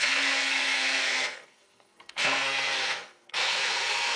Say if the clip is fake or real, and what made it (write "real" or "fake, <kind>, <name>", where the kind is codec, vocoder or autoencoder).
fake, codec, SNAC